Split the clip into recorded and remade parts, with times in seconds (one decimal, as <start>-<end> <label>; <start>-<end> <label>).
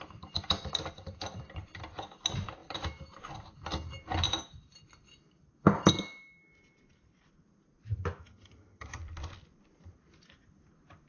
0.0-8.2 recorded; 8.2-9.0 remade; 9.0-11.1 recorded